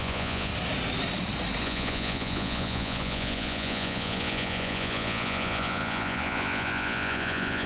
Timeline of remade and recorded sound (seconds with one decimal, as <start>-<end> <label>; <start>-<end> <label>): 0.0-0.5 remade; 0.5-1.6 recorded; 1.6-7.7 remade